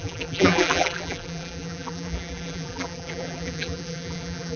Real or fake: fake